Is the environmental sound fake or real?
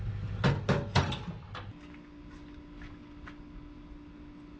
real